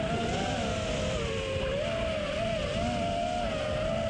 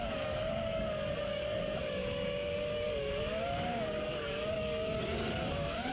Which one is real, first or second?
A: first